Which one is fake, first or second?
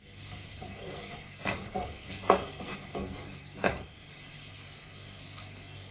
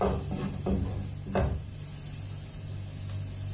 first